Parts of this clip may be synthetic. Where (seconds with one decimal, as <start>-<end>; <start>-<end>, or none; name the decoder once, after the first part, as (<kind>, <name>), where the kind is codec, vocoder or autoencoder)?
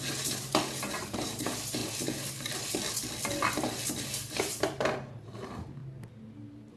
0.0-0.5 (vocoder, BigVGAN v2); 1.0-1.8; 4.4-5.8